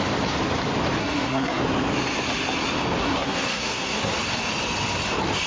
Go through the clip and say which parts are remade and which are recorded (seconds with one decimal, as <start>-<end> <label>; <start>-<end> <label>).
0.0-1.0 recorded; 1.0-1.6 remade; 1.6-3.0 recorded; 3.0-4.1 remade; 4.1-5.5 recorded